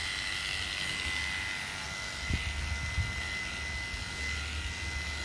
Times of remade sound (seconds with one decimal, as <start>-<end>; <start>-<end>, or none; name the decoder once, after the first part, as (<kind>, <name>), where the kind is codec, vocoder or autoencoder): none